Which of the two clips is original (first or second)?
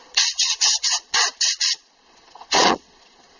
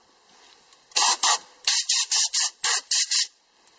second